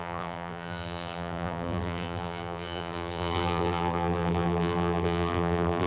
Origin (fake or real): fake